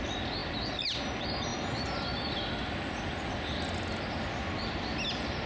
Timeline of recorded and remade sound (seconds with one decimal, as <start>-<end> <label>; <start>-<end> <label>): 0.0-5.5 recorded